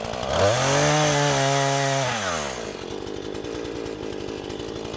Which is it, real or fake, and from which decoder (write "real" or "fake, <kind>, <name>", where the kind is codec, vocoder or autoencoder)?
real